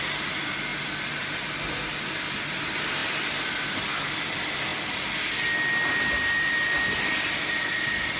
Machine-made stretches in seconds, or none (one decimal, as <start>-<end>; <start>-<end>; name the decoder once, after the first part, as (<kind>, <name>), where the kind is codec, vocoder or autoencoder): none